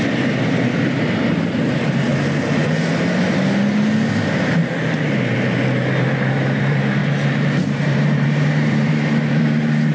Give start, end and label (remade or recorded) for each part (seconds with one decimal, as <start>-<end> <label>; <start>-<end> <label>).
0.0-2.1 remade; 2.1-6.6 recorded; 6.6-7.0 remade; 7.0-7.7 recorded; 7.7-9.9 remade